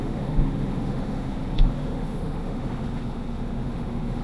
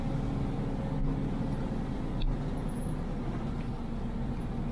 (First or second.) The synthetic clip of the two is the first